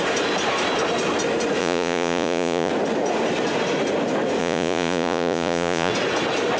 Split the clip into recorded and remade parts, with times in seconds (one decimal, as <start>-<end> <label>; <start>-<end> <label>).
0.0-1.6 recorded; 1.6-2.7 remade; 2.7-4.4 recorded; 4.4-5.9 remade; 5.9-6.6 recorded